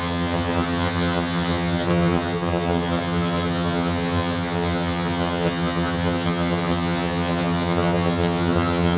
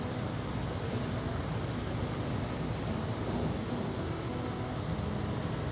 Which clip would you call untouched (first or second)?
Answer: second